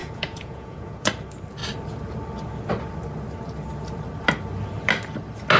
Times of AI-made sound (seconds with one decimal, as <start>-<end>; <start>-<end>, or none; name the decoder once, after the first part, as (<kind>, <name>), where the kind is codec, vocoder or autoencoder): 0.0-1.1 (vocoder, Vocos)